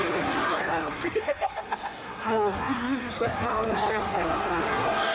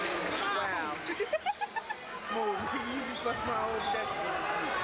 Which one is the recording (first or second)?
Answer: second